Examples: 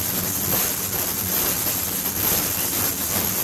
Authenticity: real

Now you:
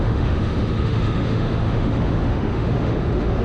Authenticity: fake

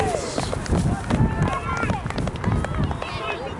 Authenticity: real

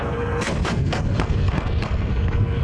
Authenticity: fake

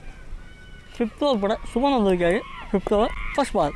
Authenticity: real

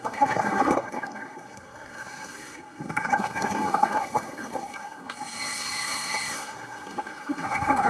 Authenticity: fake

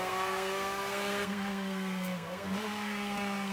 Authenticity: fake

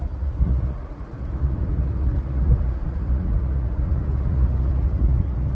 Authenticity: fake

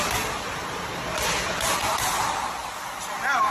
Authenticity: real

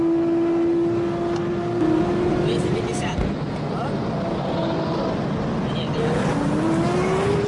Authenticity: real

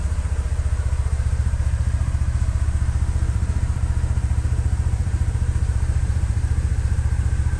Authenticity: fake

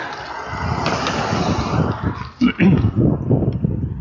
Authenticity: real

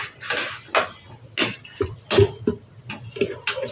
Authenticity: real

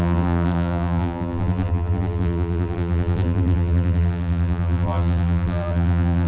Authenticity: fake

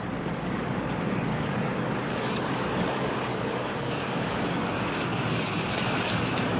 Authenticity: fake